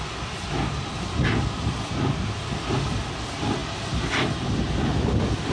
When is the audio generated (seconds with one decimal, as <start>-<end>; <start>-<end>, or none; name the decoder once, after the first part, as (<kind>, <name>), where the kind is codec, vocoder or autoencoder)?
none